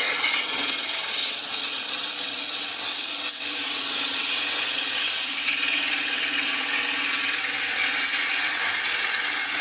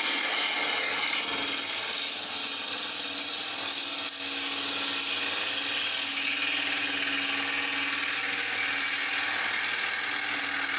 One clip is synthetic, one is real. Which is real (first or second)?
second